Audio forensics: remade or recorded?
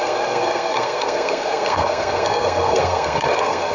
remade